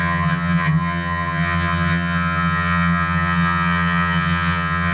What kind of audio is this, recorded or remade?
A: remade